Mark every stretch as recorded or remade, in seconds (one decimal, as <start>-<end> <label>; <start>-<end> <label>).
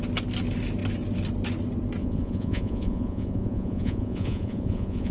0.0-2.0 recorded; 2.0-5.1 remade